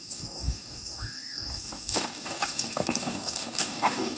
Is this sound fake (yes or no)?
yes